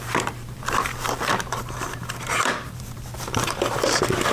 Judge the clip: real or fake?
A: fake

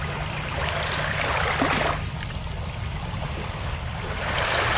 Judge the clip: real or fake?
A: real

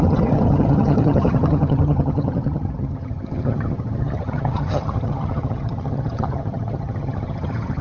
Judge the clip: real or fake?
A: fake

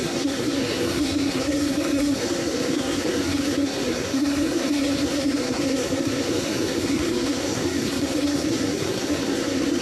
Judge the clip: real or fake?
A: fake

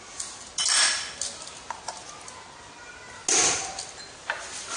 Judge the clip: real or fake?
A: real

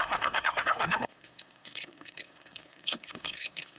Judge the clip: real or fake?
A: fake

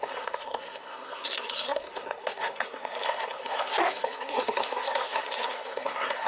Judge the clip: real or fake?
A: fake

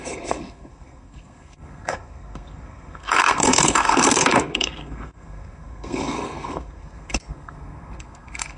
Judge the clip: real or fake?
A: fake